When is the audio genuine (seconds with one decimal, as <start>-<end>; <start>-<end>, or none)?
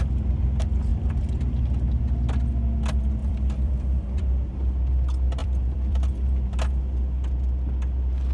0.0-0.9; 2.0-3.2; 4.5-5.4; 6.1-8.3